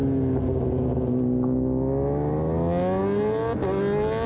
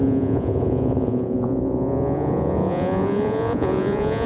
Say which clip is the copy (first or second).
second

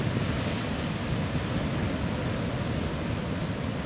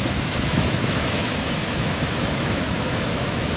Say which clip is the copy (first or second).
second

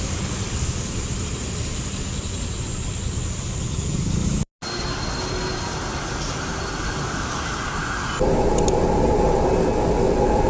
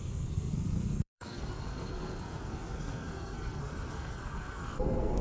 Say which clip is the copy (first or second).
second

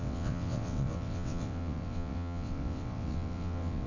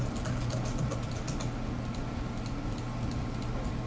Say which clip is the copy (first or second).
first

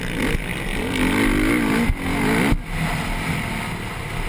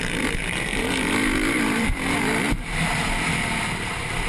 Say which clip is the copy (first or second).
second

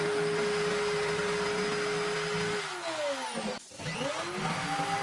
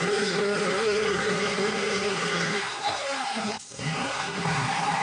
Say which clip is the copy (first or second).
second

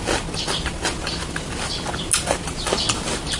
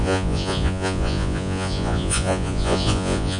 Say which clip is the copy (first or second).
second